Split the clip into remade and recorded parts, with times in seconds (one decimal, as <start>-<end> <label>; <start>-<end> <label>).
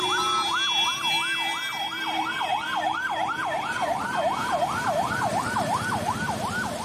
0.0-1.7 recorded; 1.7-5.4 remade; 5.4-6.8 recorded